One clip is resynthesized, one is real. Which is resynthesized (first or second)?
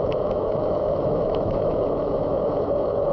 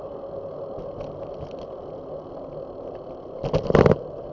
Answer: first